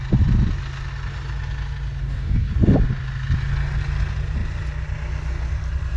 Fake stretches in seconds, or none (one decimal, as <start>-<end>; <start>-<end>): 2.0-2.5